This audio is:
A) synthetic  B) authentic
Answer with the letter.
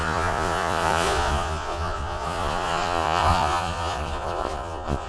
A